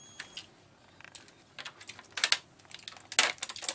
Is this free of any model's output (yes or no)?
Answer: yes